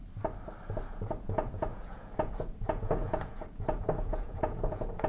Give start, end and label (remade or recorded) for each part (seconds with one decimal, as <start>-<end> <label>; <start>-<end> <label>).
0.0-0.9 recorded; 0.9-5.1 remade